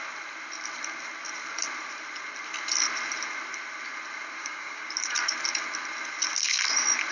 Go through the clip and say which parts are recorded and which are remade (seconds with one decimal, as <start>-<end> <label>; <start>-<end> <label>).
0.0-4.4 recorded; 4.4-4.9 remade; 4.9-7.1 recorded